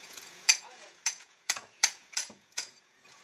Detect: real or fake fake